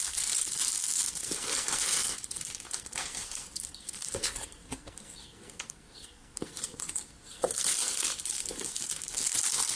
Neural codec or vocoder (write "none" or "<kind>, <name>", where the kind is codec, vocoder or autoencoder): codec, SNAC